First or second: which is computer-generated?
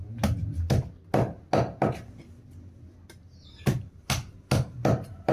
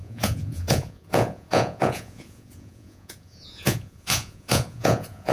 second